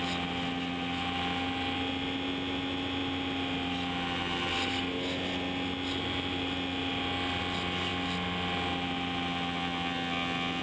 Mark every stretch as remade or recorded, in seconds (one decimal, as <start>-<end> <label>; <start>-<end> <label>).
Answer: 0.0-10.6 recorded